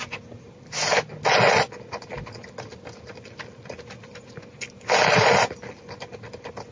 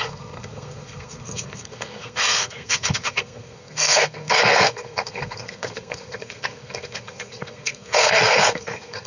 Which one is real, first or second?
first